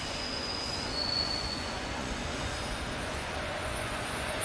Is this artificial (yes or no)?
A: yes